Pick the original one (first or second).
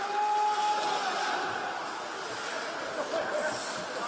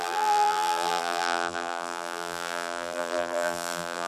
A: first